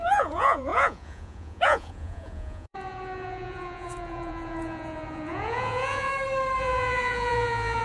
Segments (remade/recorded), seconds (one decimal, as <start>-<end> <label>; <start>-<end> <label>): 0.0-6.1 remade; 6.1-6.6 recorded; 6.6-7.8 remade